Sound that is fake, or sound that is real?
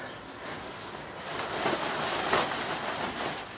real